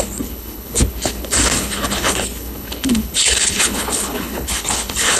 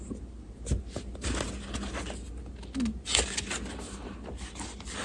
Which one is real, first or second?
second